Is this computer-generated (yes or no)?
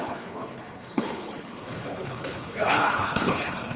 yes